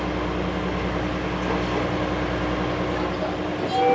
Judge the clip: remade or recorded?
recorded